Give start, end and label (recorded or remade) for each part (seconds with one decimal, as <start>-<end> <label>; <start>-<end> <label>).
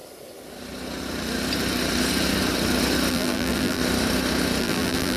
0.0-3.1 recorded; 3.1-3.8 remade; 3.8-4.6 recorded; 4.6-5.2 remade